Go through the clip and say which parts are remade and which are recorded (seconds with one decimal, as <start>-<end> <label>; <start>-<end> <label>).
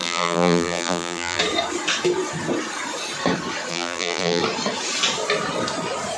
0.0-1.4 remade; 1.4-3.7 recorded; 3.7-4.4 remade; 4.4-6.2 recorded